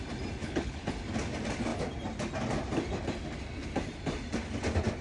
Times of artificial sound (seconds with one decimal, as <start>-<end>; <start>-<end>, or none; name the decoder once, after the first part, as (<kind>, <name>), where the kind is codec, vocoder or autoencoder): 0.4-0.9 (codec, HILCodec)